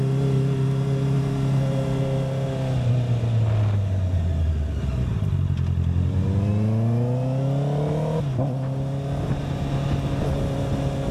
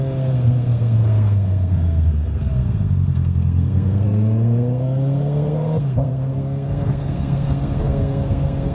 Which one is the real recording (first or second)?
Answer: first